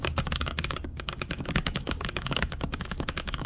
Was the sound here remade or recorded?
remade